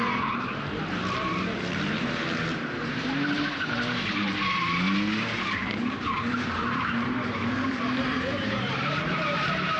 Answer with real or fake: fake